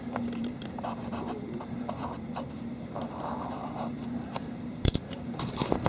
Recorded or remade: remade